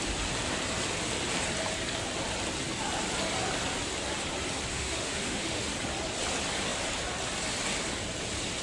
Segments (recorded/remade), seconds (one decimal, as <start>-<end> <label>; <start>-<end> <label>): 0.0-4.7 recorded; 4.7-5.7 remade; 5.7-8.6 recorded